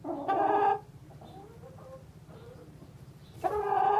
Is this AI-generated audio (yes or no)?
no